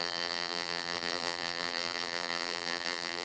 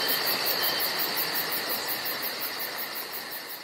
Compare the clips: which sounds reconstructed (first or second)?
first